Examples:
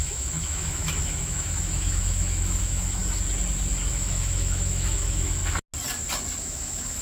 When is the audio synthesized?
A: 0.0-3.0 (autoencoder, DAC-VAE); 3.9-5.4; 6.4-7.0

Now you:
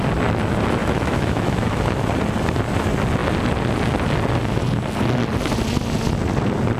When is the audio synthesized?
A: 0.8-1.9 (autoencoder, DAC-VAE)

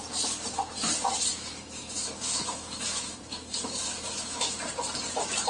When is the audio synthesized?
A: 1.3-4.6 (autoencoder, DAC-VAE)

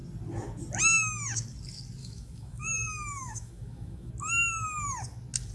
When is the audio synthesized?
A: 2.0-4.1 (autoencoder, DAC-VAE)

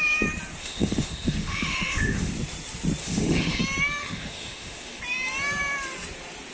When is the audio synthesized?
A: 0.6-2.3 (autoencoder, DAC-VAE); 3.0-3.6; 4.0-5.0